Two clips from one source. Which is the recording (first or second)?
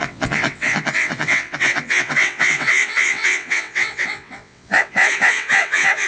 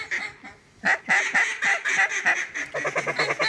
second